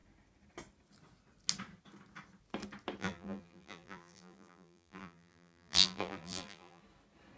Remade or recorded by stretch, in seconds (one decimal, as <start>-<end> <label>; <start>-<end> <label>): 0.0-3.0 recorded; 3.0-6.8 remade; 6.8-7.4 recorded